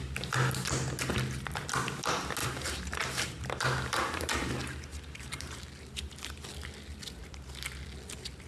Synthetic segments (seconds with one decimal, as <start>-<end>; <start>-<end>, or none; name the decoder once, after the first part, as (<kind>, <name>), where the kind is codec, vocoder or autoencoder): 2.4-4.5 (vocoder, BigVGAN v2); 4.9-5.7